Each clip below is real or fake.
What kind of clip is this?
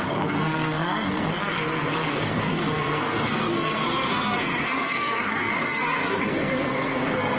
fake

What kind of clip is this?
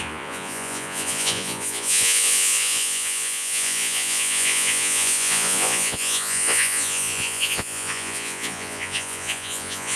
fake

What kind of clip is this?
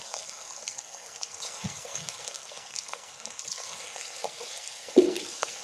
fake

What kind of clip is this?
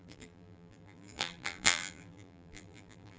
fake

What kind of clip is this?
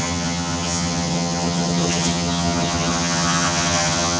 fake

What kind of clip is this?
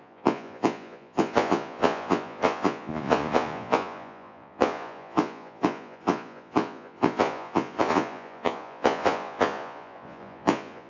fake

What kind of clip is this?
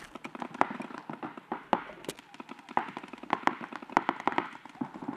real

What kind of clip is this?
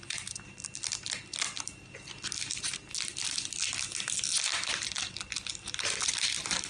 real